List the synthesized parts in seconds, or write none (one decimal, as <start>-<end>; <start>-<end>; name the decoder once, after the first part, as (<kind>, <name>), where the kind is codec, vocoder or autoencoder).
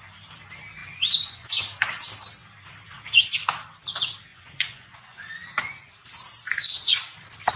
0.8-1.6 (vocoder, Vocos); 4.3-5.9